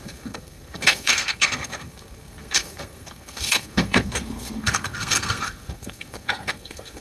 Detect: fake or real fake